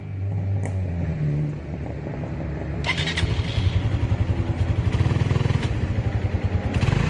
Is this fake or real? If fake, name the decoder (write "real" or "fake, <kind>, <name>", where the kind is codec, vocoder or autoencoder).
real